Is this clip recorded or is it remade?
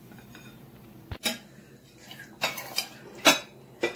recorded